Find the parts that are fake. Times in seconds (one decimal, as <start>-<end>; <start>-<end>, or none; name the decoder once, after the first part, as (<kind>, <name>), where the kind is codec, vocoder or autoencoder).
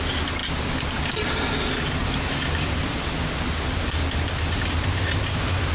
none